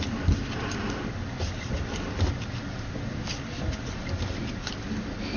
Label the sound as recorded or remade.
recorded